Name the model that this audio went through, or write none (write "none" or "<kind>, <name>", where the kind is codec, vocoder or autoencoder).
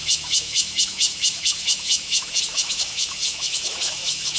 autoencoder, DAC-VAE